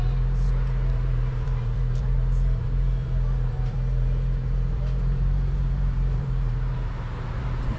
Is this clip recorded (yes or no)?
no